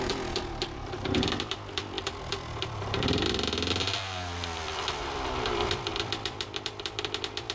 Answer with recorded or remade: remade